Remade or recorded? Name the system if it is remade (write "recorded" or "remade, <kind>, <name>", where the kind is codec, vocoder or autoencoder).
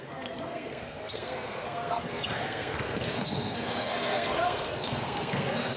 remade, codec, SNAC